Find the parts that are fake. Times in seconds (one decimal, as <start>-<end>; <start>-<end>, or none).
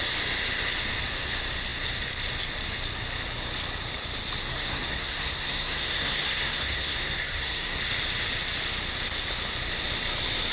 4.4-7.8